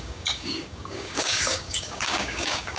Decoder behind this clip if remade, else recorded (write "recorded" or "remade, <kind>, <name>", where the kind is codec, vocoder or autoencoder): remade, codec, DAC